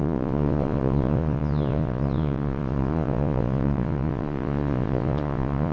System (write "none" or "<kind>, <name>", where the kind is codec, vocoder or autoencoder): vocoder, Vocos